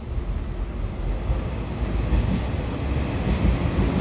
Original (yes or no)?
yes